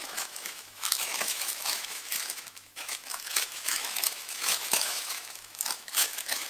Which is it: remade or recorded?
remade